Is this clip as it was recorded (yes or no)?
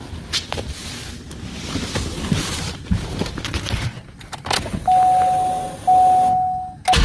yes